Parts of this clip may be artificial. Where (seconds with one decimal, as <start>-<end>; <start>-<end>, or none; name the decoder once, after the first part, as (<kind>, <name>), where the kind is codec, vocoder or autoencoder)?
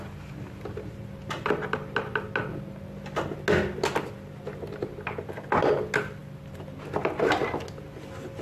none